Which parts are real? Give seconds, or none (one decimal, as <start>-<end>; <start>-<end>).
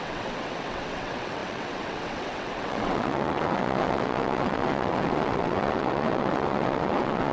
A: none